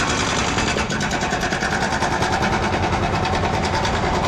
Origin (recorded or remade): recorded